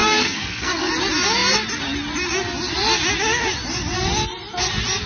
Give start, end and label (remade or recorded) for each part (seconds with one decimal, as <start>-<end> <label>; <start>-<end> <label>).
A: 0.0-0.9 remade; 0.9-5.1 recorded